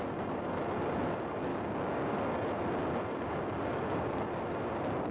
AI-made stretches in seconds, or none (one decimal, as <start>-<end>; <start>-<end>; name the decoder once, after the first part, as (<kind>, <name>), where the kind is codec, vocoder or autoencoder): 1.5-2.2 (codec, DAC); 3.1-4.2